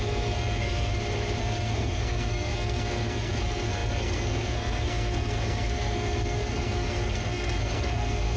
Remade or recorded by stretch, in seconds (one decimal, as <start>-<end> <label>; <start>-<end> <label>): 0.0-0.9 remade; 0.9-1.4 recorded; 1.4-8.4 remade